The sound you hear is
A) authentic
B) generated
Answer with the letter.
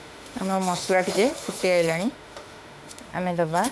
B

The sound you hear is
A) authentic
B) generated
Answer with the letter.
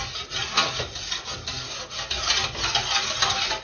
A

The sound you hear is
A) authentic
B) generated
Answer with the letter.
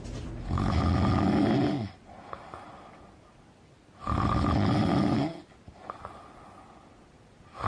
A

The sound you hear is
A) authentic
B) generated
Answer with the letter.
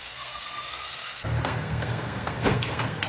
B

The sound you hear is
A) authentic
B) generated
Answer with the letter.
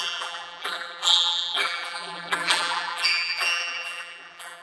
B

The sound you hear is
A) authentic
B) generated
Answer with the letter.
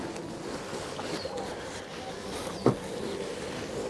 A